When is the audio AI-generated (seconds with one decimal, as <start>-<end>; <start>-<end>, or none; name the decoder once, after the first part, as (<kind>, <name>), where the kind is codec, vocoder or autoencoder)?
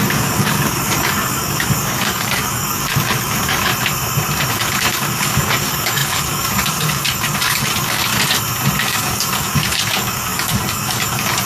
0.0-3.7 (codec, DAC); 4.5-8.1; 8.8-11.5